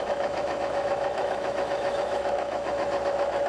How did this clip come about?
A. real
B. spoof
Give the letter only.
B